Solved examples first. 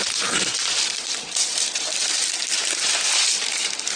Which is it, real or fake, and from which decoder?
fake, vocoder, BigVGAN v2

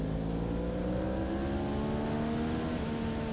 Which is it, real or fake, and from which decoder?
real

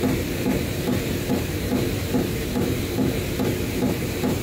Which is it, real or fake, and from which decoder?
fake, vocoder, BigVGAN v2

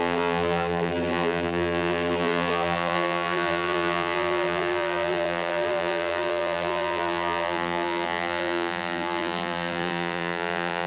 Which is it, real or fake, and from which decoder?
fake, vocoder, BigVGAN v2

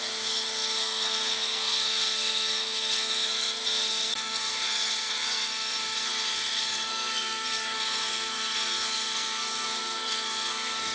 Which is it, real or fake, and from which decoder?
fake, codec, SNAC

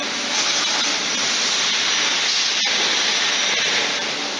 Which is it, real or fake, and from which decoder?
real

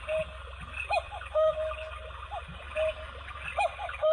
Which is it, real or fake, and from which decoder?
real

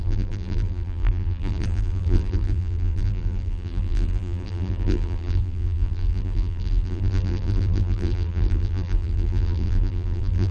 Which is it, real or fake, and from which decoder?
fake, vocoder, BigVGAN v2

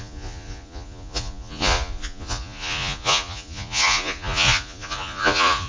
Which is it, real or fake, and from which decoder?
fake, vocoder, Vocos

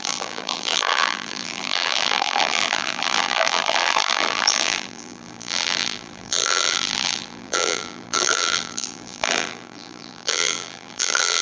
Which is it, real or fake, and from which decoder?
fake, vocoder, BigVGAN v2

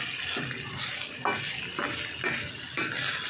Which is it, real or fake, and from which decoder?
real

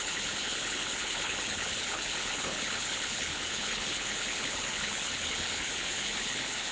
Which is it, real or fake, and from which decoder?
fake, codec, HILCodec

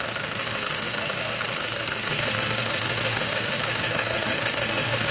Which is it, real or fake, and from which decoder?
fake, autoencoder, DAC-VAE